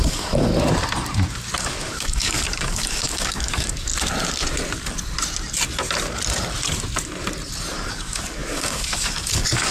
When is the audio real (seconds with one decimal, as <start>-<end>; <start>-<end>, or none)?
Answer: 0.5-1.6; 3.9-7.9

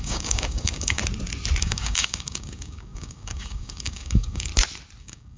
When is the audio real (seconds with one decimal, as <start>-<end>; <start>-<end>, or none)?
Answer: 1.0-1.6; 4.5-5.0

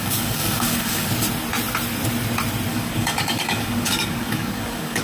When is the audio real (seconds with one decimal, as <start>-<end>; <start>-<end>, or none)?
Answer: 1.1-2.7

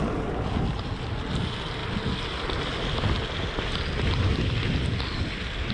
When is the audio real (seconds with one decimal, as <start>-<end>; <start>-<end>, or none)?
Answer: 0.0-5.7

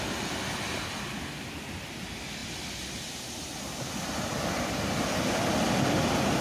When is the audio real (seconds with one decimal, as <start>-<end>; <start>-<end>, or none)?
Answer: 0.0-6.4

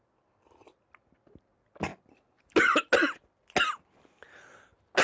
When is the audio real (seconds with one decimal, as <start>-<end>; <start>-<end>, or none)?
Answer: 0.0-5.0

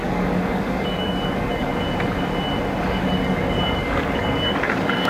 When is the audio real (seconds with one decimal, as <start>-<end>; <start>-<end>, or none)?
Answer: 1.7-2.8